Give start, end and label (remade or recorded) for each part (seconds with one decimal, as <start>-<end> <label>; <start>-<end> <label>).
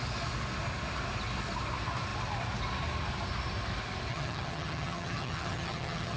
0.0-4.1 recorded; 4.1-6.2 remade